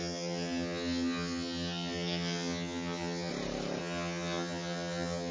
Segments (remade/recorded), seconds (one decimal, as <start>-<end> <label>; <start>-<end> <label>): 0.0-3.3 remade; 3.3-3.8 recorded; 3.8-5.3 remade